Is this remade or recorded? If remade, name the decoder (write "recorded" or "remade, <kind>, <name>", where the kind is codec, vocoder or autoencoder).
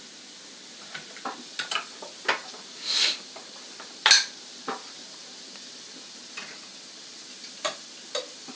recorded